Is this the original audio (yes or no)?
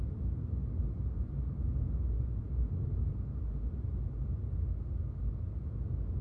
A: yes